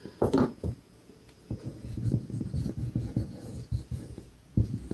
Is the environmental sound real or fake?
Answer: fake